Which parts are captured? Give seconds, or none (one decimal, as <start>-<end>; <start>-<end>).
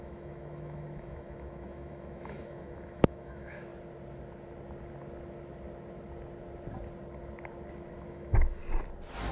3.7-8.1; 8.6-9.3